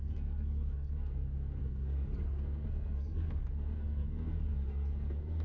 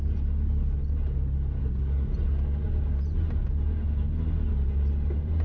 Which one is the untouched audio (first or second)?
second